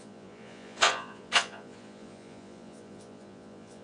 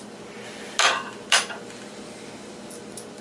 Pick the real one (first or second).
second